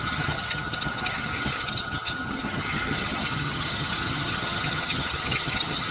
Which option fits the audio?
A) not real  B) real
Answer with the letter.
A